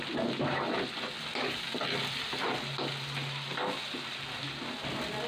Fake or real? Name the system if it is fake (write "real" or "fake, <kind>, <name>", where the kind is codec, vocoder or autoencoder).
real